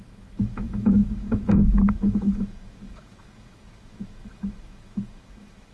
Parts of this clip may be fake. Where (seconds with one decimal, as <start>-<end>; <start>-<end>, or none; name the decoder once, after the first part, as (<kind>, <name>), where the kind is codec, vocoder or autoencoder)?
0.0-5.7 (autoencoder, DAC-VAE)